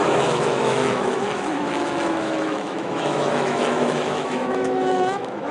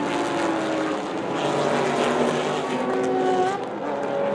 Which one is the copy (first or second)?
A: first